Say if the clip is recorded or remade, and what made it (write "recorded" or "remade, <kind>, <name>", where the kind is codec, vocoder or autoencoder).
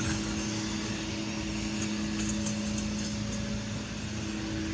recorded